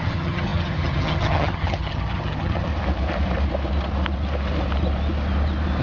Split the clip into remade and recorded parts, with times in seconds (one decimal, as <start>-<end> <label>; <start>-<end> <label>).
0.0-2.7 remade; 2.7-5.8 recorded

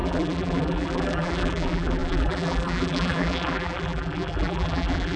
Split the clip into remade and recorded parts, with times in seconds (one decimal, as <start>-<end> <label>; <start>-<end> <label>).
0.0-5.2 remade

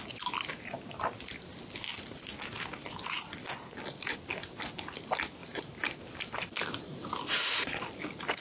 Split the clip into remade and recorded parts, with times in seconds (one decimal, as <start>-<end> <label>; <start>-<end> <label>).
0.0-5.4 recorded; 5.4-6.1 remade; 6.1-8.4 recorded